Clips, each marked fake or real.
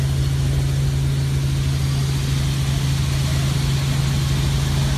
real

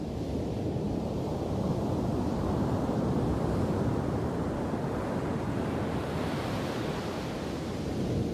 fake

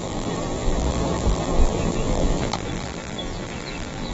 fake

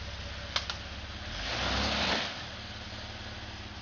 real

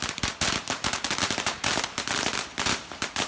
fake